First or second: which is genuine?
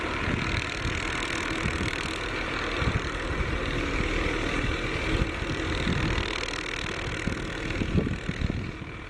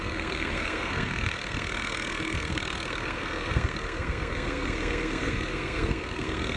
first